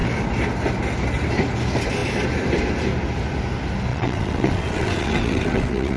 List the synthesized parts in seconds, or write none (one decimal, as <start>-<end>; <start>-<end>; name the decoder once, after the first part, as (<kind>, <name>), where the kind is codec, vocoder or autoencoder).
3.9-6.0 (vocoder, WaveNeXt)